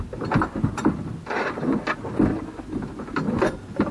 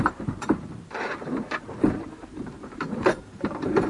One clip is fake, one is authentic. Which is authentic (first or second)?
first